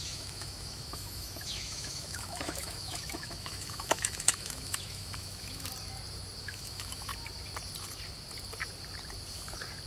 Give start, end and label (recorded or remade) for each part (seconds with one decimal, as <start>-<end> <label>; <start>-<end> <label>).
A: 0.0-5.7 remade; 5.7-6.4 recorded; 6.4-7.1 remade; 7.1-9.9 recorded